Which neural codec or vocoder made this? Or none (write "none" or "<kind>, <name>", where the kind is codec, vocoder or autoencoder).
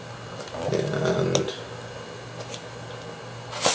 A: none